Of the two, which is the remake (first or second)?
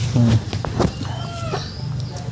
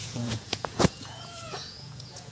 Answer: second